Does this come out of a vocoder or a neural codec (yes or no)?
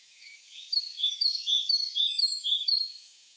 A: yes